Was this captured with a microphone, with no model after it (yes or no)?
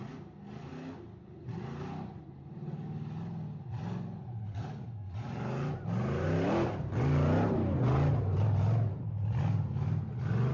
yes